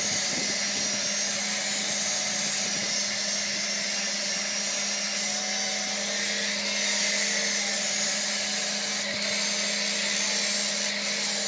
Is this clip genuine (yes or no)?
yes